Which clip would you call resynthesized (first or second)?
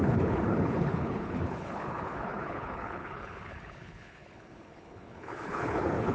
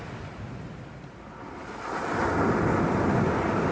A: first